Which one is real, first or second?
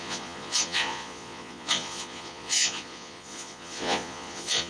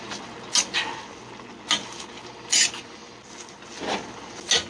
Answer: second